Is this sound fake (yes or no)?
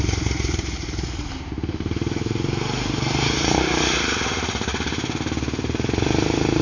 yes